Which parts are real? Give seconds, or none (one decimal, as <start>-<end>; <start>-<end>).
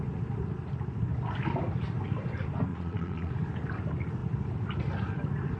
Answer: 0.0-2.7; 3.3-5.6